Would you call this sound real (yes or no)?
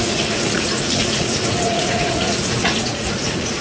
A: no